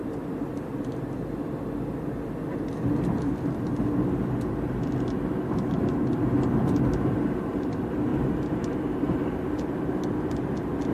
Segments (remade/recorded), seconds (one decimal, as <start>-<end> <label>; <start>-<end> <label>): 0.0-10.9 recorded

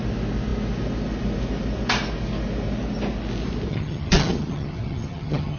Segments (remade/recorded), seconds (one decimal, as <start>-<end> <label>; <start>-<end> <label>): 0.0-3.7 recorded; 3.7-5.6 remade

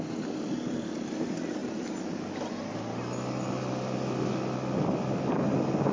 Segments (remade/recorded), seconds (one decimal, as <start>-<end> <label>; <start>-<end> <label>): 0.0-5.9 recorded

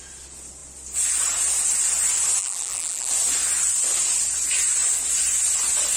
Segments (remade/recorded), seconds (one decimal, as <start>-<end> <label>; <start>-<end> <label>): 0.0-2.4 recorded; 2.4-3.1 remade; 3.1-6.0 recorded

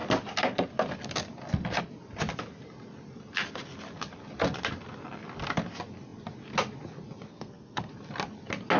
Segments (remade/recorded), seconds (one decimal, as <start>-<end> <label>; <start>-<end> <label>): 0.0-7.3 recorded; 7.3-7.9 remade; 7.9-8.8 recorded

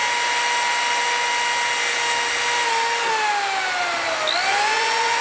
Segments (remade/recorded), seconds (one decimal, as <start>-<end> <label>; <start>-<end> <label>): 0.0-4.5 recorded; 4.5-5.2 remade